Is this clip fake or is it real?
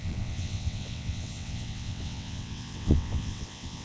fake